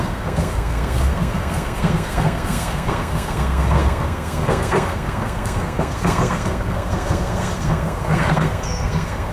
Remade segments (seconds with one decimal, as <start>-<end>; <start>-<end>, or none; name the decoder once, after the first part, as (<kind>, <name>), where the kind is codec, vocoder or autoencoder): 0.0-9.3 (codec, SNAC)

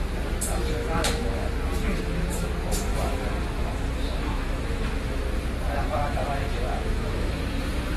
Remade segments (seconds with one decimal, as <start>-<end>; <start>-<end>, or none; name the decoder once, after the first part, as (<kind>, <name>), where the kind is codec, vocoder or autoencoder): 0.8-1.5 (autoencoder, DAC-VAE); 1.9-2.5; 2.9-5.2; 6.0-7.4

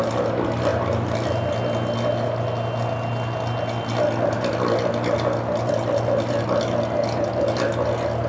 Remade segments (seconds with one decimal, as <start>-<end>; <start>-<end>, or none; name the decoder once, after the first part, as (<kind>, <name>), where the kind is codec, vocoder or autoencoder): none

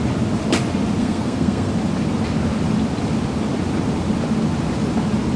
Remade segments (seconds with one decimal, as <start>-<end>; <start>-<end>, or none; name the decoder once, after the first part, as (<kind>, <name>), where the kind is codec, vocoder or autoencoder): 1.0-1.7 (codec, SNAC)

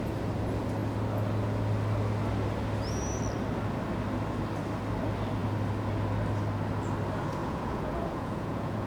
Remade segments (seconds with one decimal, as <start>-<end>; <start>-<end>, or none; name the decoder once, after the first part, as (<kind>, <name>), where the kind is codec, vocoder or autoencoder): 7.4-8.9 (vocoder, Vocos)